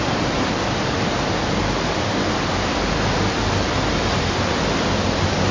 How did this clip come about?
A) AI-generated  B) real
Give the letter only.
B